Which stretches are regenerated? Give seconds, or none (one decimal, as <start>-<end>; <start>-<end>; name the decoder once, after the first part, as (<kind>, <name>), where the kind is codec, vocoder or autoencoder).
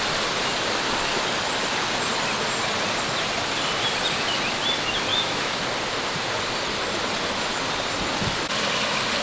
5.1-5.6 (autoencoder, DAC-VAE)